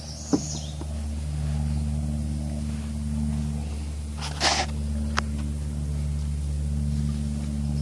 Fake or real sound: real